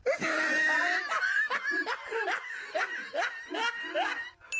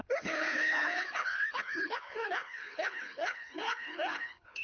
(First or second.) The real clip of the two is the first